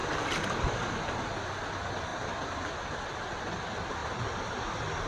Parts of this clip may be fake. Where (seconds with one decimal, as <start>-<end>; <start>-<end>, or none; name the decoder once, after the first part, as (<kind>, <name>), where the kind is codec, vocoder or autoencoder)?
none